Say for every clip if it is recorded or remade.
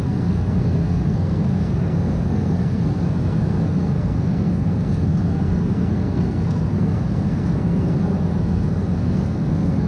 remade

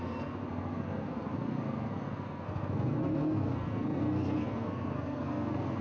remade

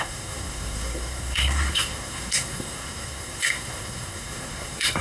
remade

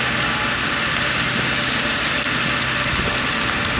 recorded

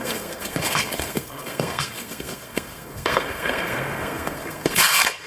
remade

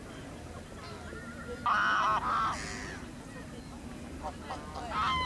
recorded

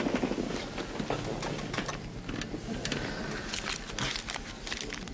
recorded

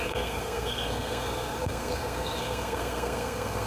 remade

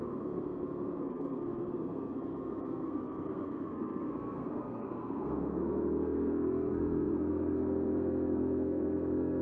remade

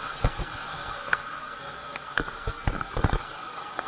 remade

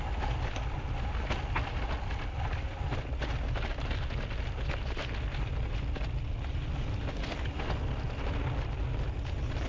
recorded